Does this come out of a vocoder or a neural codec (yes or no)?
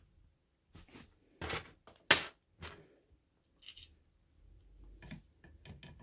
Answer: no